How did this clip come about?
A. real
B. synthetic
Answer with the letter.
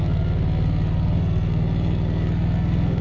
B